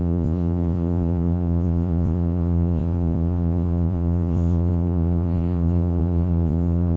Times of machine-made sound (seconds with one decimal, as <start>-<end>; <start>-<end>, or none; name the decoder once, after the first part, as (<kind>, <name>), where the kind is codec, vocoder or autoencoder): 0.0-7.0 (vocoder, Vocos)